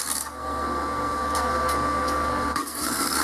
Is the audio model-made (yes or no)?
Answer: yes